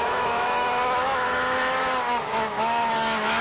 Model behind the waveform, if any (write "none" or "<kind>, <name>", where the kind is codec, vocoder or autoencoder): autoencoder, DAC-VAE